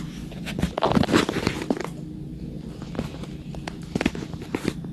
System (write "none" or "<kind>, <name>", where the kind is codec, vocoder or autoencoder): none